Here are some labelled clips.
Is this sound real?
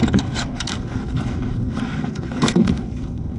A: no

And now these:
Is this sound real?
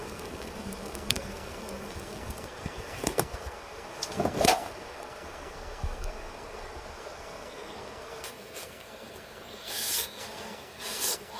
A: no